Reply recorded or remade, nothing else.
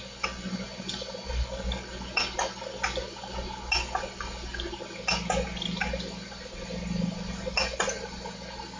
recorded